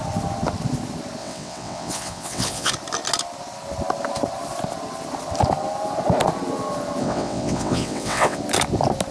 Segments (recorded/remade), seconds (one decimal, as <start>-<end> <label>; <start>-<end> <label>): 0.0-1.2 recorded; 1.2-2.7 remade; 2.7-7.0 recorded; 7.0-8.4 remade; 8.4-9.1 recorded